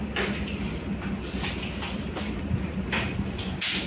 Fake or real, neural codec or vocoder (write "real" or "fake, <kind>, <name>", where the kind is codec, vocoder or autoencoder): real